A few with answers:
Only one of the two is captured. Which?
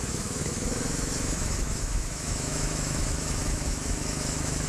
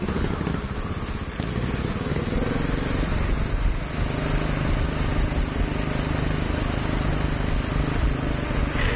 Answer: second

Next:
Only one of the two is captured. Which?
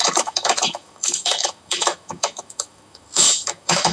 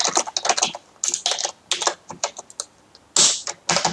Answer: second